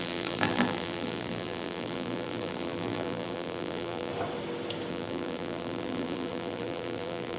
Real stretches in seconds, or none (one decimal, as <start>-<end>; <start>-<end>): 4.1-4.9